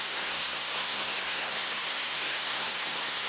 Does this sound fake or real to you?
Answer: fake